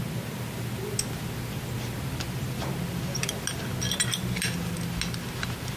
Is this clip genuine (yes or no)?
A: yes